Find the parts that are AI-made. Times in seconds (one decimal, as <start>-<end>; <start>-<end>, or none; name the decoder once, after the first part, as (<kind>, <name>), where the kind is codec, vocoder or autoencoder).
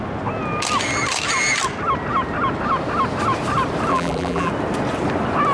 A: 3.9-4.5 (vocoder, BigVGAN v2)